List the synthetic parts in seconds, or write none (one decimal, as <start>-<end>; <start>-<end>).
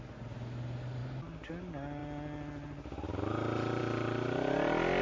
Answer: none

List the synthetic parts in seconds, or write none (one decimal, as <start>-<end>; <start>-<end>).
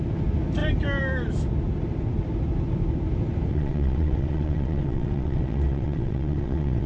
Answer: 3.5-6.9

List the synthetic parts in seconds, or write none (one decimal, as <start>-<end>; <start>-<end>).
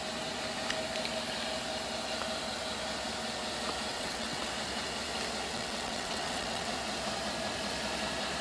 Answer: 3.9-4.5; 5.5-6.7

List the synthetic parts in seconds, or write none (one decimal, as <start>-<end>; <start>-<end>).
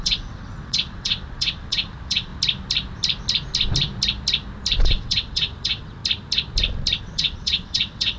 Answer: 0.0-2.3; 4.8-6.0; 7.0-8.2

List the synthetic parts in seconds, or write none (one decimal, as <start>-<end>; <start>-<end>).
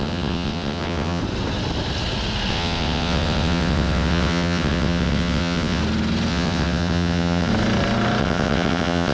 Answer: 0.0-1.2; 2.5-5.8; 6.3-7.5; 8.2-9.1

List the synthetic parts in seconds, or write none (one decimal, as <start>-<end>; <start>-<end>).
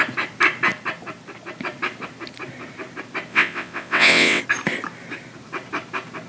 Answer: 3.3-4.4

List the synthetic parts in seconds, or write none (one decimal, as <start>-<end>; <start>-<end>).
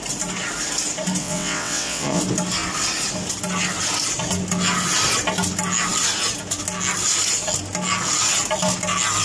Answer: 1.2-2.2